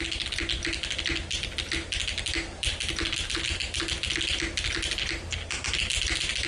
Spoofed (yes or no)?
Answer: no